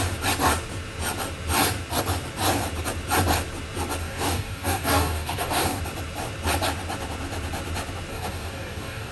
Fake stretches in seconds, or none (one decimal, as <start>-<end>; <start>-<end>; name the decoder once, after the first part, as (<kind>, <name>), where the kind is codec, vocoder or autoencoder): 4.0-5.8 (codec, DAC); 8.1-9.1